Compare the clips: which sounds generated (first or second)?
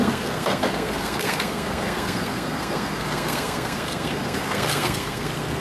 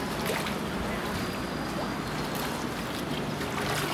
first